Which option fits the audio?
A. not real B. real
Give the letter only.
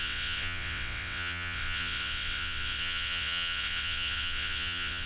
A